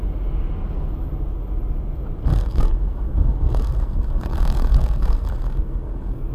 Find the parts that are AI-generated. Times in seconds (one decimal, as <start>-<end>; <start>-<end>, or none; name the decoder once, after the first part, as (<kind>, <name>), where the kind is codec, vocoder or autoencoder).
2.3-6.3 (codec, SNAC)